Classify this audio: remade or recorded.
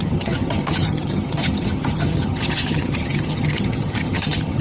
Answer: remade